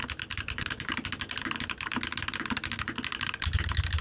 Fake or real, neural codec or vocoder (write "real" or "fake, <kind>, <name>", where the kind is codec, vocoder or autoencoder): real